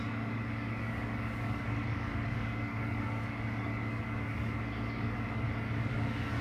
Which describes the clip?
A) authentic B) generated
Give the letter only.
B